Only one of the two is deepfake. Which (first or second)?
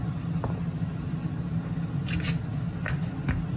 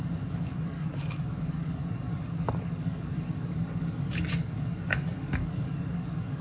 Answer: second